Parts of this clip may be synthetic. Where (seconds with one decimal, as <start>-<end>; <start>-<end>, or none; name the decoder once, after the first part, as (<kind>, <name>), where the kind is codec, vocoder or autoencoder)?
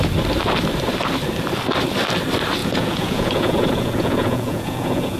2.6-5.2 (vocoder, Vocos)